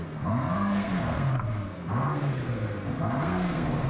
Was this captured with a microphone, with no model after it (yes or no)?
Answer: no